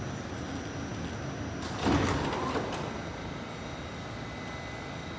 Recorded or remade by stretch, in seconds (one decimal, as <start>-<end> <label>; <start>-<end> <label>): 0.0-5.2 recorded